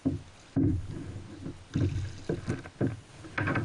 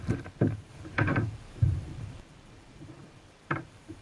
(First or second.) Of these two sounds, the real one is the first